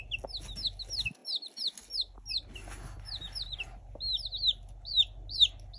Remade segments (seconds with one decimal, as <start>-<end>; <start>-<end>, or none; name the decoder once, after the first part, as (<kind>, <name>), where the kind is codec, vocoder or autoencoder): none